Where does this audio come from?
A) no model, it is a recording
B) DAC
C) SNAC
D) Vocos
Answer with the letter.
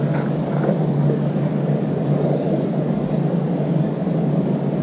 B